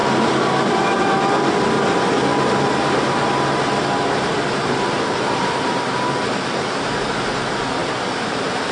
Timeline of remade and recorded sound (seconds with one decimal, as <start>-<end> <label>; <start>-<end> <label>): 0.0-2.3 recorded; 2.3-6.0 remade; 6.0-7.8 recorded; 7.8-8.7 remade